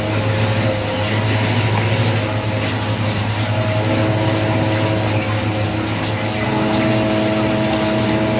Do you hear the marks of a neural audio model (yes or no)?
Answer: no